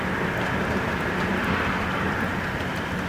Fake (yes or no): no